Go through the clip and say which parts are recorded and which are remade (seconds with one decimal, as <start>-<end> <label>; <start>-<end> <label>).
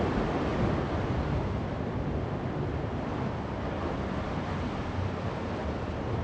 0.0-6.2 recorded